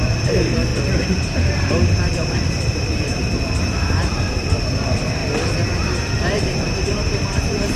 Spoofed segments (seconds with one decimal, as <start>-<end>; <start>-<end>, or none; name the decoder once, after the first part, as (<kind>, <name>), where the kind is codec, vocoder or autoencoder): 0.0-0.7 (vocoder, BigVGAN v2); 1.7-5.2; 6.2-7.8